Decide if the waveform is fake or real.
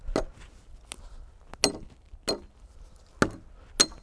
real